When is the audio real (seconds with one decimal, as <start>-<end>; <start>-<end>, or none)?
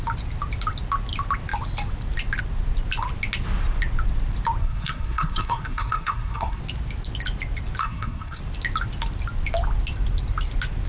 0.0-4.6; 6.6-7.8; 8.4-10.9